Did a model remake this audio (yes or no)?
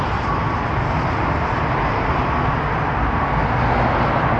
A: no